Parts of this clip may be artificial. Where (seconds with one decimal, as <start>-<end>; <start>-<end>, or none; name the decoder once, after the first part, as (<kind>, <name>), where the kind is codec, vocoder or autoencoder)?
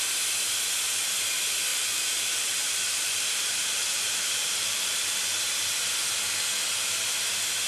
1.7-5.2 (vocoder, BigVGAN v2)